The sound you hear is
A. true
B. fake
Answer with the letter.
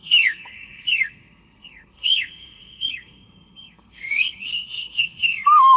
B